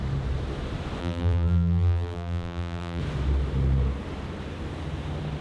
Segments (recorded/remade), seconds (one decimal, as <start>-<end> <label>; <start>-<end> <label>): 0.0-1.0 recorded; 1.0-3.0 remade; 3.0-5.4 recorded